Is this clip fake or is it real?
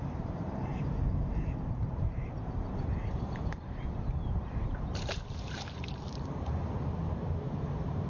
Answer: fake